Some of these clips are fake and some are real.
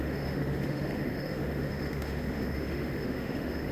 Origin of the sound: fake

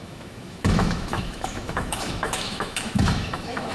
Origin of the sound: fake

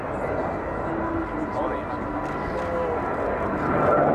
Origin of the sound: real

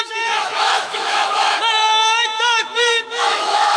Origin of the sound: fake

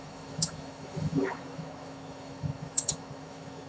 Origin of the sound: fake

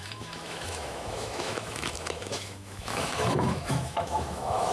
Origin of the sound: fake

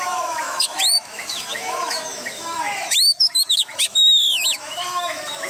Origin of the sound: fake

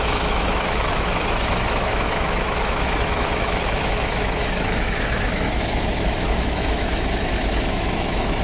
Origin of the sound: fake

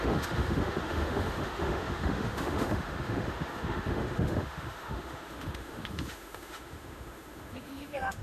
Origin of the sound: fake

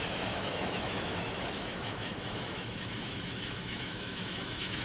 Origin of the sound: fake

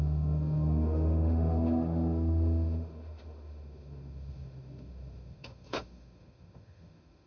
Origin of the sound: fake